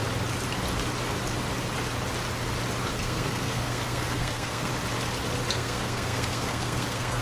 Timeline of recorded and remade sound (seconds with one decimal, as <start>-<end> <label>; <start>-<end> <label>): 0.0-2.9 recorded; 2.9-4.7 remade; 4.7-5.5 recorded; 5.5-7.2 remade